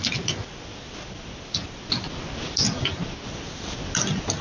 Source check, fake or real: real